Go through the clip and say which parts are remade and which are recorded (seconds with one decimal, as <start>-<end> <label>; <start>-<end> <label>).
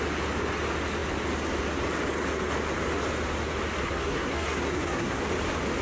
0.0-3.8 recorded; 3.8-5.2 remade; 5.2-5.8 recorded